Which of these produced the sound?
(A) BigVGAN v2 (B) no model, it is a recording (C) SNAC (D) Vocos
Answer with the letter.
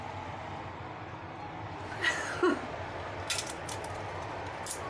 B